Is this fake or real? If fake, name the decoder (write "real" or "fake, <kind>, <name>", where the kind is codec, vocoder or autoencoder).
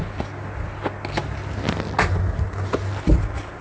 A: real